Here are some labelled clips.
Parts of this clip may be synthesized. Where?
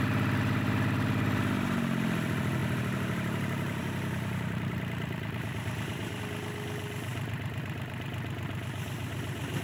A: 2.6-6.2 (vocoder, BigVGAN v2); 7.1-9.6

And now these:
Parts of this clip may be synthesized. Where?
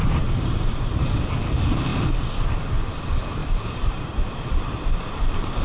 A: 0.0-1.1 (vocoder, BigVGAN v2); 3.4-4.2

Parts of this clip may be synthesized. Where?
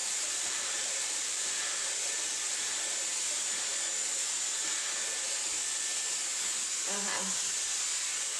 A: 0.0-1.5 (vocoder, BigVGAN v2)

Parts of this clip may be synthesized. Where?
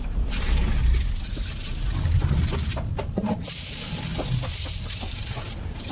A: 0.0-0.8 (vocoder, BigVGAN v2); 3.0-4.1; 4.7-5.9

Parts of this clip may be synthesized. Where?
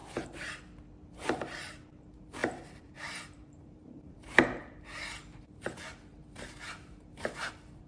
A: 1.1-7.9 (vocoder, BigVGAN v2)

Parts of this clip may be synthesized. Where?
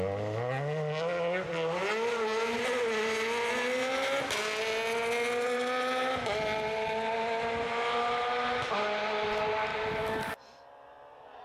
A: none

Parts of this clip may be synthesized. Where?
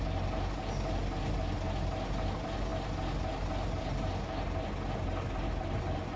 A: none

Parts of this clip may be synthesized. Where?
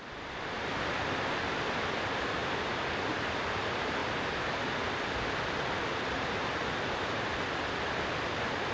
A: none